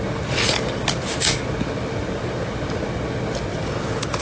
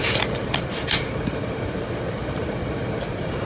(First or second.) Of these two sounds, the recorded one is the first